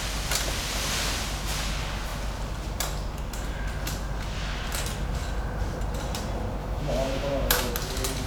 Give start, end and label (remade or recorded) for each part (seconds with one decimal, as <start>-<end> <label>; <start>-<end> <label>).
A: 0.0-6.6 recorded; 6.6-7.7 remade; 7.7-8.3 recorded